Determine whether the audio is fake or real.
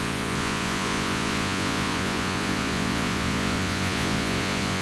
fake